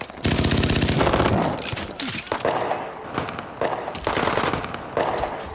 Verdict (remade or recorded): recorded